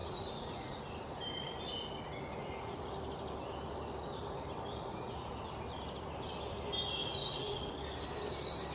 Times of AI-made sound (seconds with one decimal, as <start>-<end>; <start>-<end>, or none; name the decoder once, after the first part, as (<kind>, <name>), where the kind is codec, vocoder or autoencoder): 0.0-0.8 (vocoder, Vocos); 2.4-2.9; 4.9-5.4; 7.0-7.7